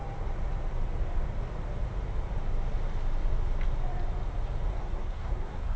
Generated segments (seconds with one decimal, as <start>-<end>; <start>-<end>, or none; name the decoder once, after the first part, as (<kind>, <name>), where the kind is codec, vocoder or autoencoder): 4.8-5.8 (codec, SNAC)